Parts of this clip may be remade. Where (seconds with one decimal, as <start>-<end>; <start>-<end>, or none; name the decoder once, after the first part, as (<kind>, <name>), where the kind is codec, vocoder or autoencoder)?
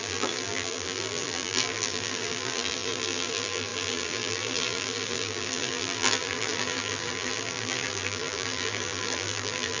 0.0-9.8 (vocoder, BigVGAN v2)